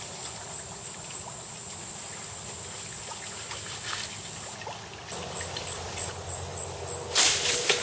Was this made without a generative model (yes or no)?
yes